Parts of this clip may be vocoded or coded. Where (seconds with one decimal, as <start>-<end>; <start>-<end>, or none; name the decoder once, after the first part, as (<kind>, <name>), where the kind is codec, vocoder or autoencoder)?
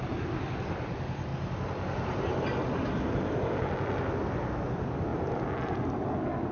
none